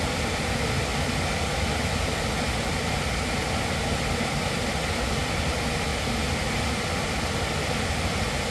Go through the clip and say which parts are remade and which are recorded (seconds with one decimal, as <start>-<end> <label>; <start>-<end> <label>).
0.0-8.5 recorded